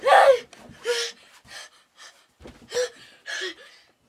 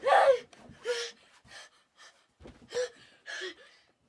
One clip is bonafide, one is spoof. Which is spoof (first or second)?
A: second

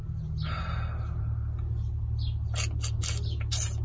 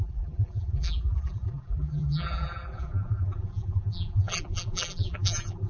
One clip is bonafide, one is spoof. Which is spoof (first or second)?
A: second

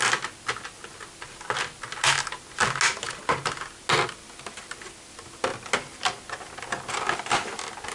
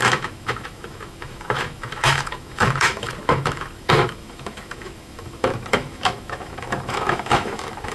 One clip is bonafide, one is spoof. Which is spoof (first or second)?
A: second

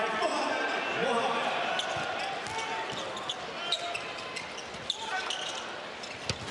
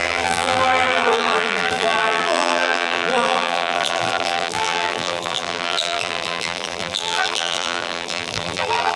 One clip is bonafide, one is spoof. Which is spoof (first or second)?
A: second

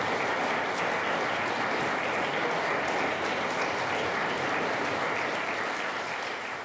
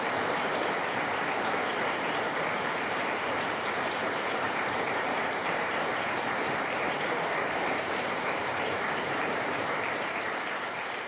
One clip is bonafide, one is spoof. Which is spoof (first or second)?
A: second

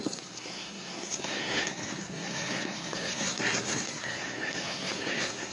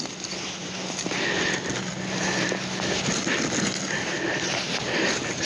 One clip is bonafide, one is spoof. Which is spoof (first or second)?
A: first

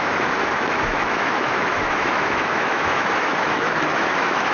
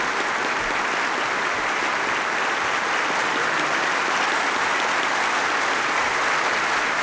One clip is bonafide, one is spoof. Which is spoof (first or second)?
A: first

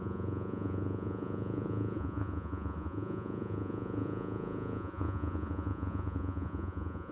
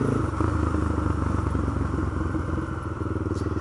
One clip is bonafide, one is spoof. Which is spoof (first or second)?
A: first